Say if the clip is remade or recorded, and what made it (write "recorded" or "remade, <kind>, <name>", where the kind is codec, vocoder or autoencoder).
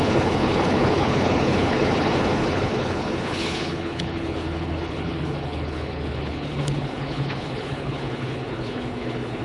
remade, codec, HILCodec